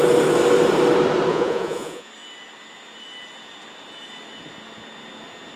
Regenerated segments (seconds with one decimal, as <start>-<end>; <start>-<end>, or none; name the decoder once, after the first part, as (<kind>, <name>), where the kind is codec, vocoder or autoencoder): 1.3-2.1 (vocoder, Vocos)